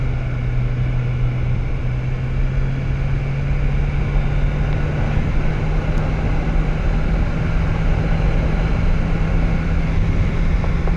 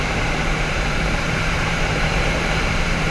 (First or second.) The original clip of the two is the first